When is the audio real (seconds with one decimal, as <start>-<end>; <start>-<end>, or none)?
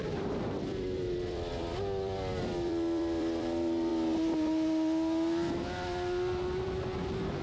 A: 3.9-6.6